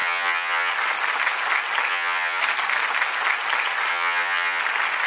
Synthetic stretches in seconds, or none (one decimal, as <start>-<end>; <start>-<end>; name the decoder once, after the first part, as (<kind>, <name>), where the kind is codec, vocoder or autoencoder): 0.0-0.7 (vocoder, HiFi-GAN); 1.9-2.4; 3.9-4.6